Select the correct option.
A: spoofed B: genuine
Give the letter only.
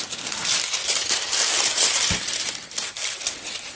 B